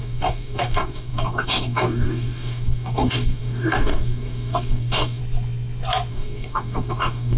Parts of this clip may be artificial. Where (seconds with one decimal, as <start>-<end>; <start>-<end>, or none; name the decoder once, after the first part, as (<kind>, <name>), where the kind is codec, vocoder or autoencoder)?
0.0-5.2 (codec, DAC); 6.1-7.4